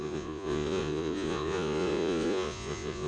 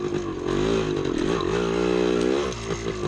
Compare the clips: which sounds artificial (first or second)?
first